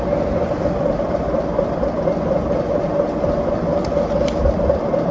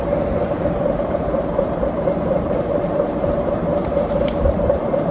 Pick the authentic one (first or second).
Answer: first